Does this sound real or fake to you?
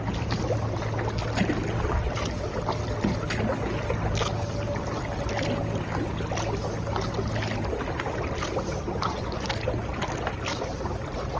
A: real